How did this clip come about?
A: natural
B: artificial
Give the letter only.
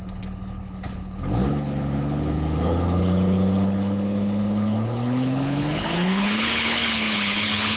B